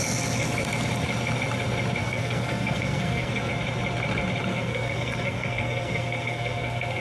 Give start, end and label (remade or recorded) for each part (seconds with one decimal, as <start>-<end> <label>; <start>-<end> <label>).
0.0-2.0 recorded; 2.0-3.5 remade; 3.5-4.5 recorded; 4.5-7.0 remade